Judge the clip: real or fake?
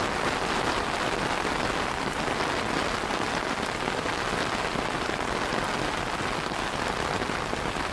real